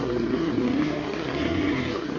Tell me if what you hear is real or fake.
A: fake